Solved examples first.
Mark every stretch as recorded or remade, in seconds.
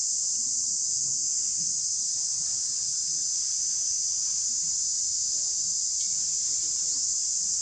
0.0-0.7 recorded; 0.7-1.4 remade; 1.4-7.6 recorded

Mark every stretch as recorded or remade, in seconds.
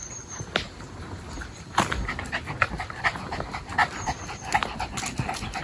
0.0-5.6 recorded